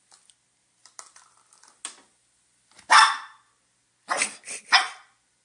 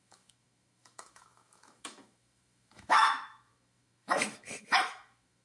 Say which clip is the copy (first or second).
second